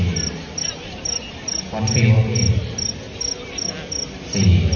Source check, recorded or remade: recorded